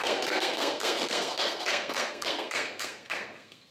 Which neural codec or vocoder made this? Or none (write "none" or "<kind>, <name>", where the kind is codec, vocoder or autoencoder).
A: codec, SNAC